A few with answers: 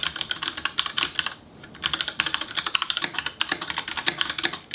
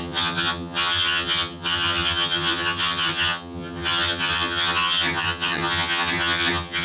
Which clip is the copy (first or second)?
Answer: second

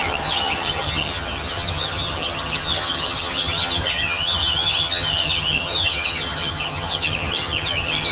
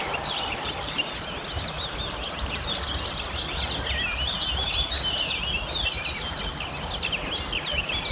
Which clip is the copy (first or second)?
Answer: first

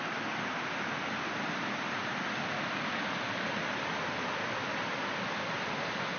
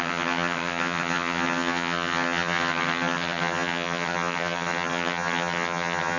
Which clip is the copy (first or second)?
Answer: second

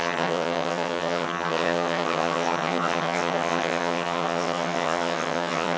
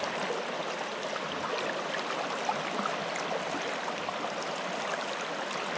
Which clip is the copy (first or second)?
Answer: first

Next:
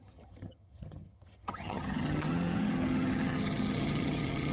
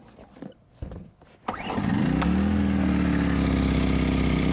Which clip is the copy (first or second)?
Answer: first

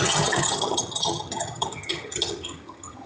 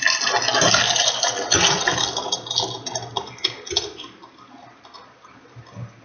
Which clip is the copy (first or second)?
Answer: first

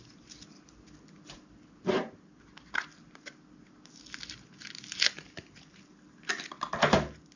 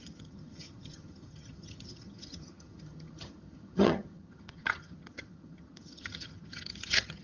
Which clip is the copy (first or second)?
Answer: second